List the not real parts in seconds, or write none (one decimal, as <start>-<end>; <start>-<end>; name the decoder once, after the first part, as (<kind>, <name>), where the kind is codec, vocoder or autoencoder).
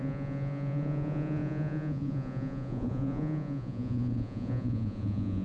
0.0-5.4 (vocoder, Vocos)